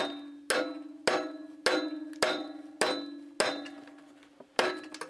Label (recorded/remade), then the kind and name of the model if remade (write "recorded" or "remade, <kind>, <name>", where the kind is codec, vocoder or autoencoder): recorded